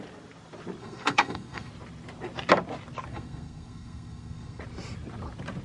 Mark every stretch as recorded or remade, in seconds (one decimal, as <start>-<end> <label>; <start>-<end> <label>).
0.0-0.8 recorded; 0.8-1.7 remade; 1.7-3.1 recorded; 3.1-4.6 remade; 4.6-5.6 recorded